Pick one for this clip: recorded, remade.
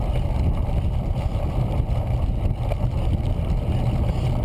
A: recorded